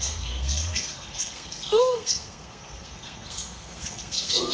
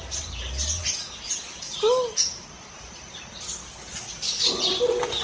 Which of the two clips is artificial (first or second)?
first